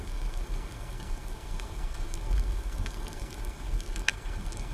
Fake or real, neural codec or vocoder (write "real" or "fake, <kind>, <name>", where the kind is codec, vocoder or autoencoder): fake, codec, SNAC